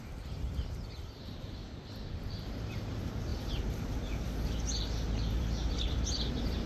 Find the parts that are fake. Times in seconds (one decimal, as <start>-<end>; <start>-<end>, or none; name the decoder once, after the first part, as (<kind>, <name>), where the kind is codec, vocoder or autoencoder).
0.0-1.6 (vocoder, BigVGAN v2); 2.4-6.7